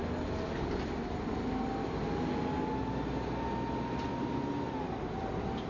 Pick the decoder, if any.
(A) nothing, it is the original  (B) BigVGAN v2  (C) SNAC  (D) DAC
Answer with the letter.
A